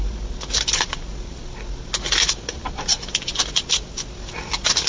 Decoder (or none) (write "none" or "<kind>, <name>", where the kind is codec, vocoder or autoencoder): none